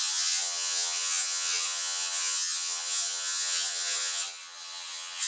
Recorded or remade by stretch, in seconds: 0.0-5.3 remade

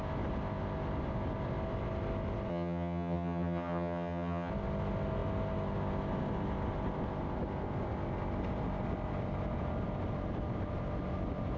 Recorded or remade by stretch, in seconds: 0.0-2.5 recorded; 2.5-4.5 remade; 4.5-11.6 recorded

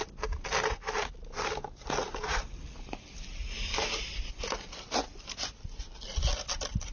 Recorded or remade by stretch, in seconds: 0.0-6.9 recorded

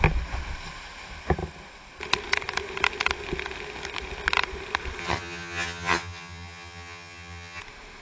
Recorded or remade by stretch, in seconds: 0.0-5.0 recorded; 5.0-7.6 remade; 7.6-8.0 recorded

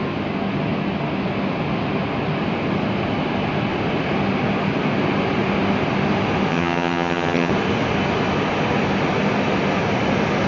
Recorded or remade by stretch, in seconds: 0.0-6.5 recorded; 6.5-7.5 remade; 7.5-10.5 recorded